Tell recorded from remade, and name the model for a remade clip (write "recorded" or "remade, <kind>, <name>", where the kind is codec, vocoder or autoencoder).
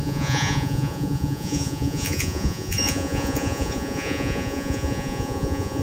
remade, vocoder, Vocos